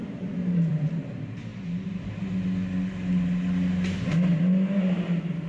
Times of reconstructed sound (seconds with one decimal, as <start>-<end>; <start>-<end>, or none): 0.0-1.5; 4.8-5.5